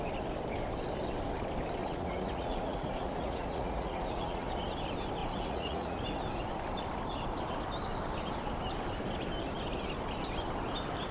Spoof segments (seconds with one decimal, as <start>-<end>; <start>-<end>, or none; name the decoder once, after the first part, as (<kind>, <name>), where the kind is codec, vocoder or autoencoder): 1.8-4.5 (vocoder, Vocos); 5.2-6.0

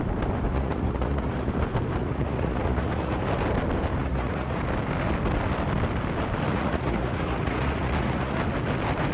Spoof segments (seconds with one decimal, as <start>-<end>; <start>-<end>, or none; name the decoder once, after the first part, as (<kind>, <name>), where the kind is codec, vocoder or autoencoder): 0.5-1.5 (vocoder, Vocos); 2.0-3.2; 4.0-4.6; 6.5-8.4